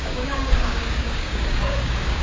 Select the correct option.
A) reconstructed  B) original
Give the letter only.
A